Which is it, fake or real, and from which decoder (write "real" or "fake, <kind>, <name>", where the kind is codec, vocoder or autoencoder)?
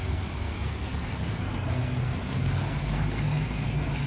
fake, codec, SNAC